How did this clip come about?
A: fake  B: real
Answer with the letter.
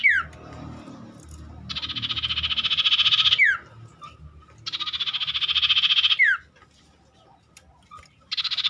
B